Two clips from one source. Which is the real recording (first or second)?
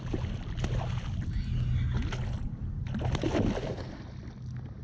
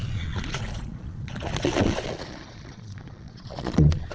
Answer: first